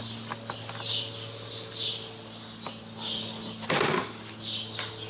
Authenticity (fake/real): real